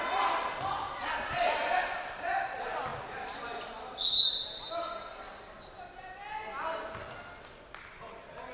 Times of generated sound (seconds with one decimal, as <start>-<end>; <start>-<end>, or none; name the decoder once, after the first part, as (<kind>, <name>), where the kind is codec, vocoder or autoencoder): none